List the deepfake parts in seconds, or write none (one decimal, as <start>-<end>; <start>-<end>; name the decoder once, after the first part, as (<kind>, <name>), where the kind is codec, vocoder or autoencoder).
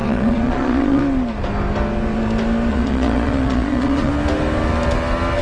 0.0-1.0 (vocoder, Vocos); 2.7-4.1